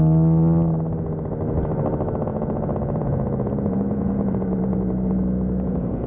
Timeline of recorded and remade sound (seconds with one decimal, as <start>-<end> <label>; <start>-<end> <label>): 0.0-2.3 recorded; 2.3-6.1 remade